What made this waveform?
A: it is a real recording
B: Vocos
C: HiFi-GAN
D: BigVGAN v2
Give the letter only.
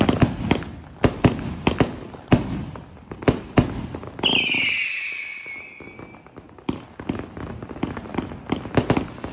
A